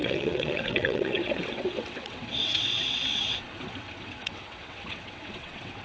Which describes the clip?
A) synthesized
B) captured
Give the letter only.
A